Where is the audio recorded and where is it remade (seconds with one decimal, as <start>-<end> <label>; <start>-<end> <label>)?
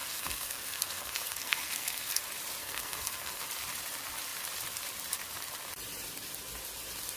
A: 0.0-2.2 remade; 2.2-2.6 recorded; 2.6-3.4 remade; 3.4-7.2 recorded